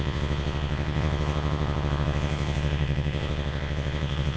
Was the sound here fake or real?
fake